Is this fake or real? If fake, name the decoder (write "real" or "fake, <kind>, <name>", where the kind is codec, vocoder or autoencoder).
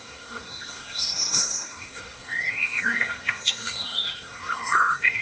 fake, codec, SNAC